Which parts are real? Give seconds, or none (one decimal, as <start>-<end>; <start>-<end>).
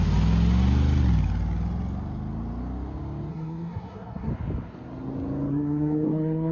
0.0-3.3; 4.3-5.5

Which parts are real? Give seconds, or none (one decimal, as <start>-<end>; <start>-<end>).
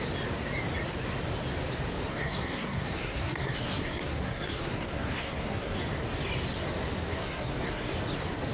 0.0-2.1; 5.8-7.1; 7.9-8.5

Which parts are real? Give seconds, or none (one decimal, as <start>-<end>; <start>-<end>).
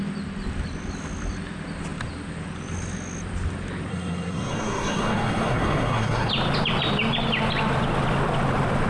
0.0-3.9; 6.3-8.9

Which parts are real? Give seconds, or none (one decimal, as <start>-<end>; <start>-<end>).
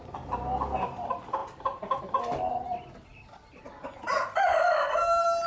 0.0-5.5